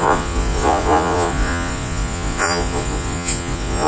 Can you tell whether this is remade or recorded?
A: remade